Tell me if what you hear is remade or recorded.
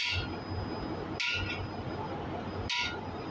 recorded